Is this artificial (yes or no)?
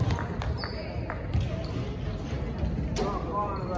no